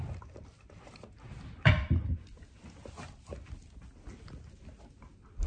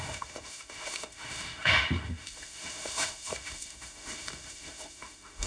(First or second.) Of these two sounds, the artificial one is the second